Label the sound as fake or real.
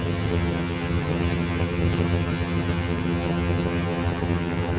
fake